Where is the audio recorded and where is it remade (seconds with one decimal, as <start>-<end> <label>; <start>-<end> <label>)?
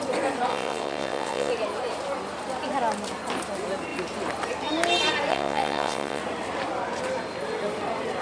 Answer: 0.0-0.5 recorded; 0.5-1.5 remade; 1.5-5.3 recorded; 5.3-6.2 remade; 6.2-8.2 recorded